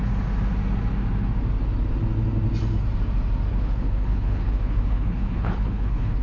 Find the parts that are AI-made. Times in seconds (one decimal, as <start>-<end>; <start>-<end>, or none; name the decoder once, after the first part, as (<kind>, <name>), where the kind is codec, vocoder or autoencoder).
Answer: 3.5-6.2 (codec, HILCodec)